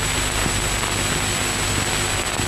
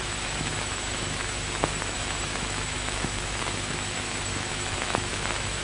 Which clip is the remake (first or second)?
second